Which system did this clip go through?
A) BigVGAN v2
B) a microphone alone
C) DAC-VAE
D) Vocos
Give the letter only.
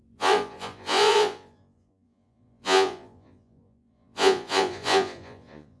D